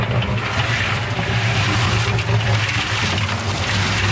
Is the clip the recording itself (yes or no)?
yes